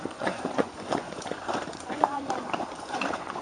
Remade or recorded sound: remade